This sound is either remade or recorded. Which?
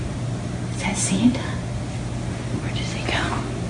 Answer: recorded